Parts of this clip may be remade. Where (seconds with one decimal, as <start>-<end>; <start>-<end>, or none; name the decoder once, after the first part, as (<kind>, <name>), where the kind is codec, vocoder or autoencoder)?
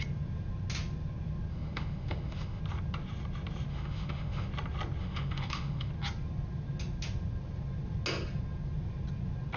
1.5-2.6 (autoencoder, DAC-VAE); 3.7-4.5; 5.0-5.9